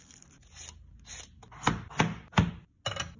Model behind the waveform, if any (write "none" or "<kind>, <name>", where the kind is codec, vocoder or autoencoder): none